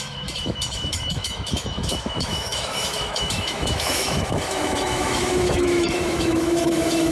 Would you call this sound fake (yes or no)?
yes